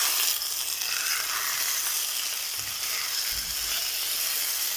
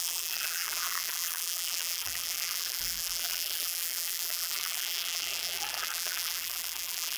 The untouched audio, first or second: first